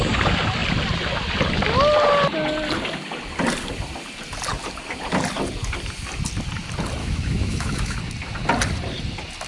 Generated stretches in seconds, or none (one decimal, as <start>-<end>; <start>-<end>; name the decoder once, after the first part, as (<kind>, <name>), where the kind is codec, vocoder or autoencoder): 7.0-8.0 (autoencoder, DAC-VAE)